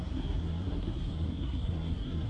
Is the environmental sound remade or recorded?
remade